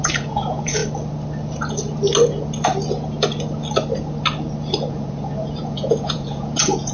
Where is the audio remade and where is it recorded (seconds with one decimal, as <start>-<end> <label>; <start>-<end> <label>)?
0.0-0.8 remade; 0.8-4.9 recorded; 4.9-6.9 remade